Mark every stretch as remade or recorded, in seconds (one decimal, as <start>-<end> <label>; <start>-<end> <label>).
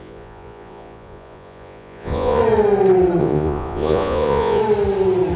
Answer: 0.0-2.4 remade; 2.4-3.2 recorded; 3.2-4.6 remade; 4.6-5.4 recorded